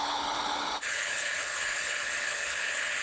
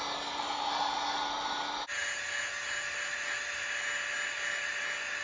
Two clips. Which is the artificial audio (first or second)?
first